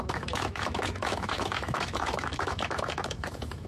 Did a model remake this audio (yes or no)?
yes